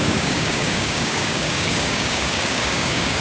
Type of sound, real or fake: fake